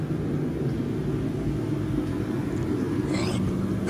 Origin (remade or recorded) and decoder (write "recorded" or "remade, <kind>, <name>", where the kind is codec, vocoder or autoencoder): recorded